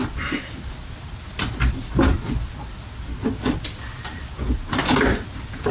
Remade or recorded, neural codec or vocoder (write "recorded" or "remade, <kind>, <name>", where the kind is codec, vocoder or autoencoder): recorded